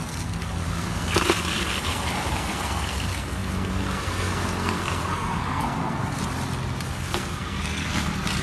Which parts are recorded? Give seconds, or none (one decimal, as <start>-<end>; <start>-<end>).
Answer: 6.2-6.9